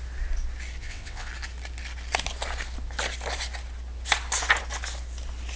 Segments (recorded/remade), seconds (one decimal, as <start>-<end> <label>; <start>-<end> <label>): 0.0-0.8 recorded; 0.8-1.3 remade; 1.3-5.6 recorded